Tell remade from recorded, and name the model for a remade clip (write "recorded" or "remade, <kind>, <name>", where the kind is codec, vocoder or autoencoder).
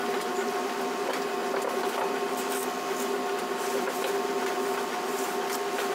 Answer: recorded